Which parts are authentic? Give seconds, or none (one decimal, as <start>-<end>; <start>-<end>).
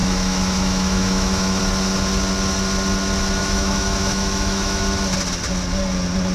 1.6-3.4; 4.8-6.3